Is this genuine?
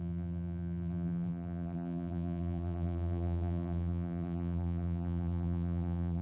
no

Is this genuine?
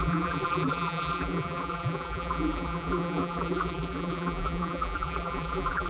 no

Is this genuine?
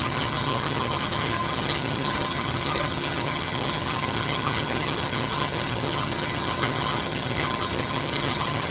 no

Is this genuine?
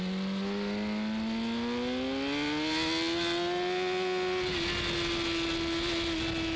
yes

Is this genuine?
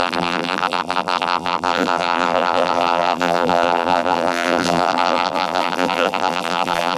no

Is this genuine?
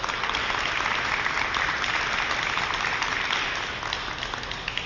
yes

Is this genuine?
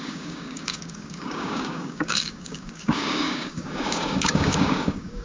no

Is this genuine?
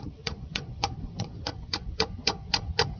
no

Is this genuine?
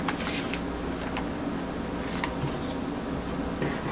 yes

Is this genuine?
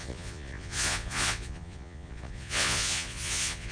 no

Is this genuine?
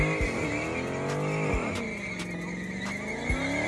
yes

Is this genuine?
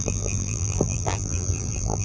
no